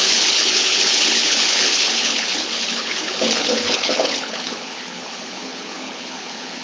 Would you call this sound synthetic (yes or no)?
yes